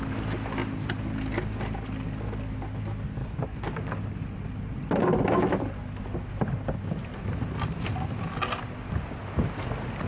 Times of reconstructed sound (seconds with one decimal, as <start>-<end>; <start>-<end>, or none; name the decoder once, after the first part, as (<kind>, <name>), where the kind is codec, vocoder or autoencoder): none